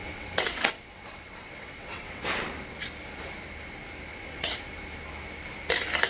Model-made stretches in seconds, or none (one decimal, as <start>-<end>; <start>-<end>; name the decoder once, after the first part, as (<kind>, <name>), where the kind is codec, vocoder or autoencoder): 0.0-2.5 (vocoder, WaveNeXt); 4.1-4.6